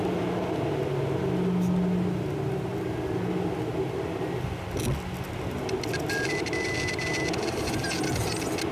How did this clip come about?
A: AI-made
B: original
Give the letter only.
B